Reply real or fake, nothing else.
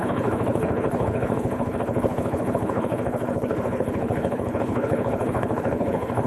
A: fake